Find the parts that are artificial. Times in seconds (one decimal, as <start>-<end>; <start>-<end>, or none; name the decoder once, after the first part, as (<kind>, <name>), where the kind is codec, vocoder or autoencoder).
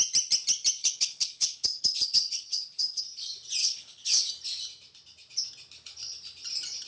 0.8-3.0 (codec, HILCodec); 3.6-4.3